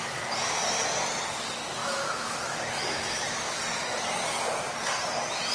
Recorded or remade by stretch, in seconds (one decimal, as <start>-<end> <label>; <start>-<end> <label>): 0.0-1.8 recorded; 1.8-3.6 remade; 3.6-5.5 recorded